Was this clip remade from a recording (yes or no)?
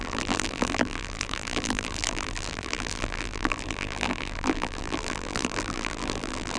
yes